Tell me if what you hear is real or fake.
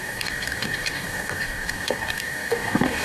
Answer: fake